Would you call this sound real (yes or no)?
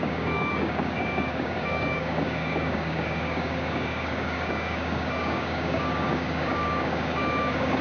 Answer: no